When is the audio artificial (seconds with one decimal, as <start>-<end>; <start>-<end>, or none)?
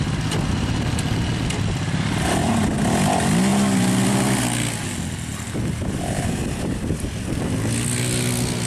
5.3-7.2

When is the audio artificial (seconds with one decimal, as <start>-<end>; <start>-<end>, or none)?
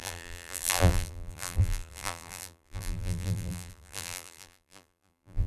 0.0-5.5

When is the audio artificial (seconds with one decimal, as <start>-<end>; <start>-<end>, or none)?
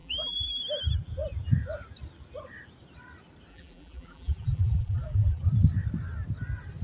0.0-0.6; 3.5-5.4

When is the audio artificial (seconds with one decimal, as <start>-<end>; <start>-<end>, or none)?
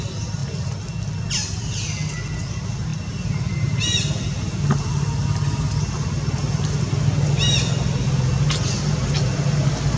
none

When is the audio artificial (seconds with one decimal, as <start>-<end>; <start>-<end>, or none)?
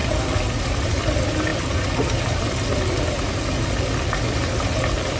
0.0-0.7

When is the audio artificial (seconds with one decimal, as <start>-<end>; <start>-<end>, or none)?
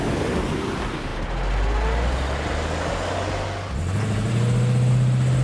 none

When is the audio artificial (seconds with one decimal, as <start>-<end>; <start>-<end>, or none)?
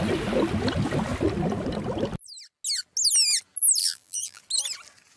3.8-4.4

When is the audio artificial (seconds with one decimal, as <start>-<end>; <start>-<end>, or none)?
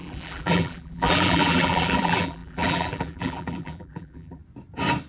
0.0-4.4